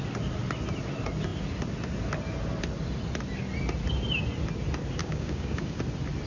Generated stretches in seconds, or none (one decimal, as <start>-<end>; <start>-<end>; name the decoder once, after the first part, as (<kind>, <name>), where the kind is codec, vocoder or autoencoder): 5.0-5.8 (codec, DAC)